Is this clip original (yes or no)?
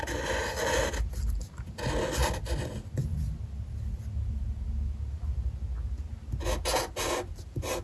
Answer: yes